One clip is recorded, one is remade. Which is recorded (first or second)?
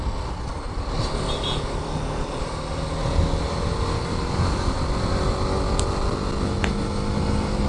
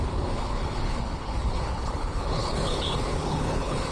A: first